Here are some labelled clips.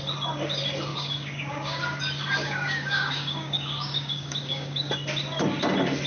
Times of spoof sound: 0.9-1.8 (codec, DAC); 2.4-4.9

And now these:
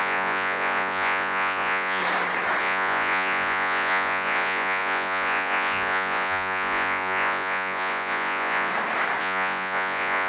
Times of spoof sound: 0.0-2.0 (vocoder, Vocos); 2.6-8.7; 9.2-10.3

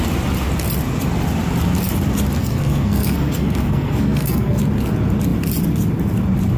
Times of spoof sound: 2.4-4.6 (codec, SNAC)